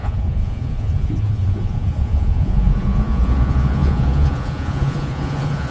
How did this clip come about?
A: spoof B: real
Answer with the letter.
A